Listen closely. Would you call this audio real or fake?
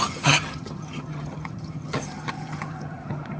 fake